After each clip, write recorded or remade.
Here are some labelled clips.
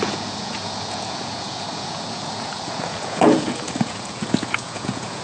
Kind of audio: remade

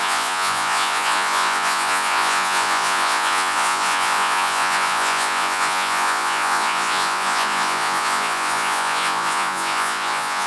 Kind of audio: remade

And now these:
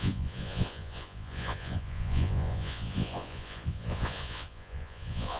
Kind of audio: remade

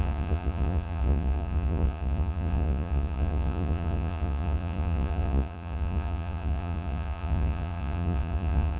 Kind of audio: remade